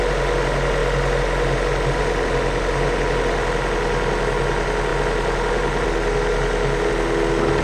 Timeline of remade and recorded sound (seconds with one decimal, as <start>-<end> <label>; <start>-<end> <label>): 0.0-7.6 recorded